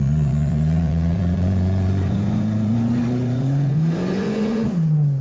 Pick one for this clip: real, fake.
fake